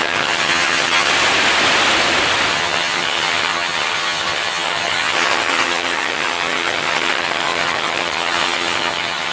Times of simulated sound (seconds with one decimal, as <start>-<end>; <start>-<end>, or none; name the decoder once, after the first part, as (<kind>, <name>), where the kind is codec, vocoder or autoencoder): 0.0-1.1 (vocoder, HiFi-GAN); 2.5-9.3